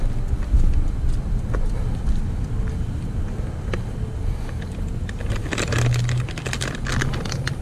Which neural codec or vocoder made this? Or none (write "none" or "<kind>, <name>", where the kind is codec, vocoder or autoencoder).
none